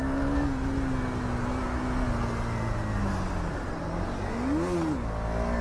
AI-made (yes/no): no